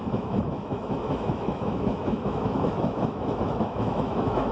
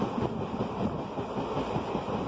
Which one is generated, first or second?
first